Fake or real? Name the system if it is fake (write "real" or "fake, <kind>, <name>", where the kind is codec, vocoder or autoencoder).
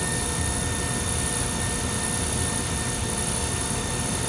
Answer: real